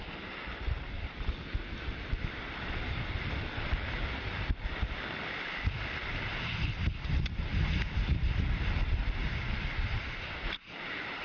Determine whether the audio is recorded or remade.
remade